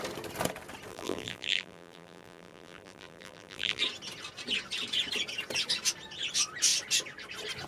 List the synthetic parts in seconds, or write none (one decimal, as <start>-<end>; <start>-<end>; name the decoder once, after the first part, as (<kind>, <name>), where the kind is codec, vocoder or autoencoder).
0.9-3.8 (vocoder, BigVGAN v2)